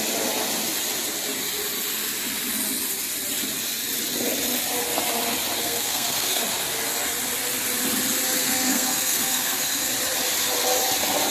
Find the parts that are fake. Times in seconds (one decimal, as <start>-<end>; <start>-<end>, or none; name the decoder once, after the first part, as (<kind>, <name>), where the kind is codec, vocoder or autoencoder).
5.6-6.4 (codec, SNAC); 8.4-9.9